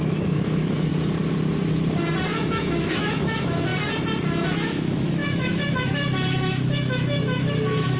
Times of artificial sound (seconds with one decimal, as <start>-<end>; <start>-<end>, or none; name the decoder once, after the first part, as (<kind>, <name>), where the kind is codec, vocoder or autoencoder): 0.0-0.9 (autoencoder, DAC-VAE); 2.3-3.7; 4.5-8.0